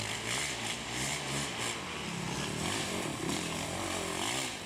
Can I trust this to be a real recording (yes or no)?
yes